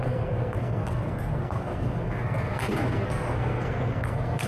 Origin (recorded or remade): remade